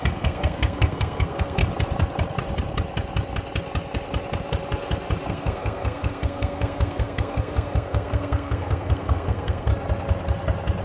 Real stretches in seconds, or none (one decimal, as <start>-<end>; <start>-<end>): 1.6-5.3; 9.7-10.8